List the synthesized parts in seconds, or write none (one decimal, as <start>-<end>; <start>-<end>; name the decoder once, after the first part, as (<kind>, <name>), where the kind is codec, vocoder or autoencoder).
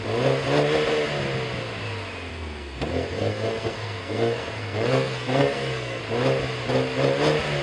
2.3-6.0 (codec, SNAC)